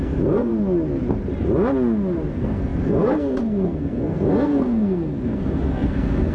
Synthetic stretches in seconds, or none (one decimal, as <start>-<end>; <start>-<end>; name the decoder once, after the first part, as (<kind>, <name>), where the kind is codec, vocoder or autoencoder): 0.0-0.5 (codec, SNAC); 2.3-6.3